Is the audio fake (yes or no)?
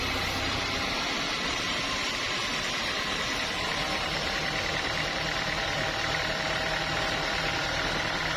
yes